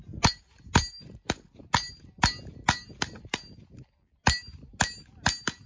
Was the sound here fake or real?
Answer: real